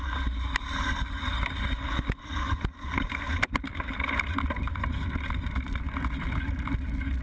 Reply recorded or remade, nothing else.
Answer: recorded